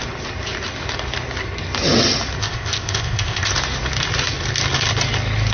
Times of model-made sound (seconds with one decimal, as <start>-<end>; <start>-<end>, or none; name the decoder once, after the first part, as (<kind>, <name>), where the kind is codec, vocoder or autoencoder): 2.4-3.5 (codec, ZipCodec)